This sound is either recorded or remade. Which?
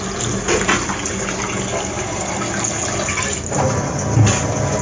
recorded